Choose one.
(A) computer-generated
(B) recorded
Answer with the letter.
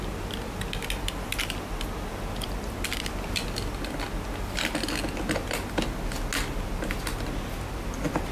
B